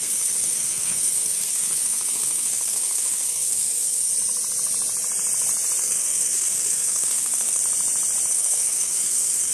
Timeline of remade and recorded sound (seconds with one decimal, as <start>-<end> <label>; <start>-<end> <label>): 0.0-4.1 remade; 4.1-5.8 recorded; 5.8-7.6 remade; 7.6-8.3 recorded; 8.3-9.5 remade